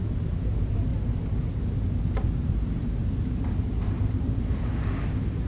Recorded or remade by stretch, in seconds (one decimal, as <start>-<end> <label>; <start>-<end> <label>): 0.0-0.9 remade; 0.9-1.5 recorded; 1.5-5.5 remade